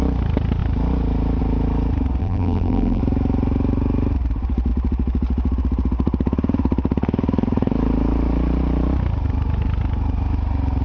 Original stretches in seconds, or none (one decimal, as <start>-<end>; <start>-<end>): 0.0-2.2; 3.0-10.8